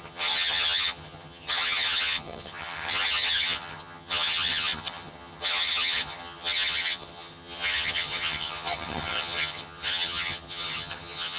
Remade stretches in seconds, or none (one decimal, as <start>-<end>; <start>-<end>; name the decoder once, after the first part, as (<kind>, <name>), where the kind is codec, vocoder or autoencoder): 0.0-11.4 (vocoder, HiFi-GAN)